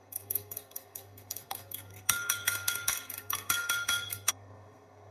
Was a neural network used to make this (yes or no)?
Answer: yes